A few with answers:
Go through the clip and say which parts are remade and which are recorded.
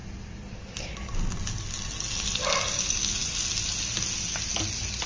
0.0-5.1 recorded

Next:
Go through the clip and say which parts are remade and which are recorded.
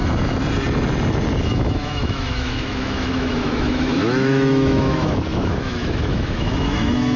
0.0-1.4 recorded; 1.4-7.2 remade